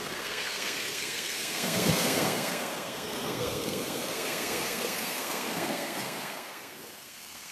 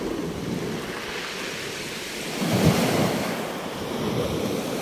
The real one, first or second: second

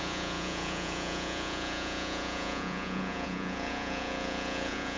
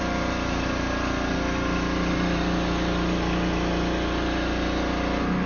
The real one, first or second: second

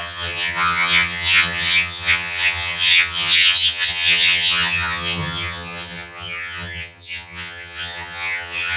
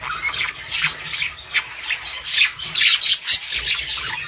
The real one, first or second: second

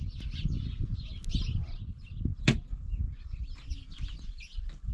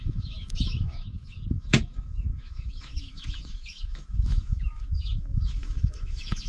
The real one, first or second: first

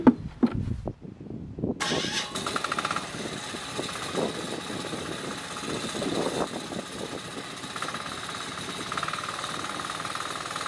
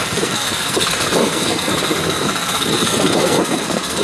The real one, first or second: first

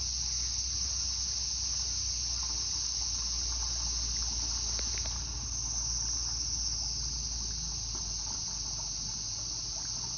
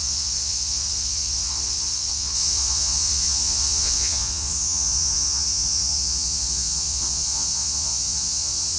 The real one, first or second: first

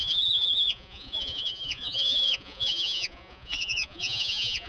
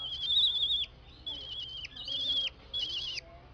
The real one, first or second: second